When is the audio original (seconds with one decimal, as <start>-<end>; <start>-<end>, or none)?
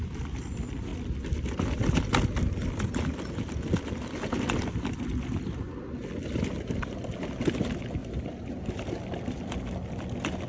0.0-8.0; 8.7-10.5